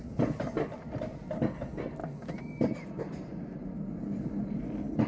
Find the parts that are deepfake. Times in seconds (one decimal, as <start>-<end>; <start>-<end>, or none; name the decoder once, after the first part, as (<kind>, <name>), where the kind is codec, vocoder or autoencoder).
2.0-5.1 (vocoder, BigVGAN v2)